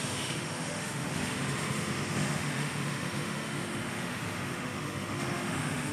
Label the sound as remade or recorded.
remade